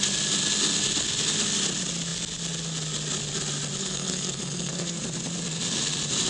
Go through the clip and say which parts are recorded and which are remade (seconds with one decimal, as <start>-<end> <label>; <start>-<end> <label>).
0.0-3.8 recorded; 3.8-5.0 remade; 5.0-6.3 recorded